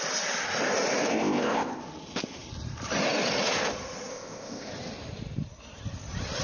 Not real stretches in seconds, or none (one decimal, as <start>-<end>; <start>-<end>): 1.1-1.8; 4.1-4.7